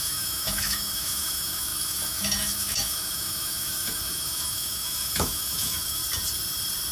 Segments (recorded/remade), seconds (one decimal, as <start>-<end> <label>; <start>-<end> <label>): 0.0-6.0 remade; 6.0-6.9 recorded